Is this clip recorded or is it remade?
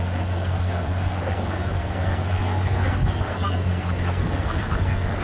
remade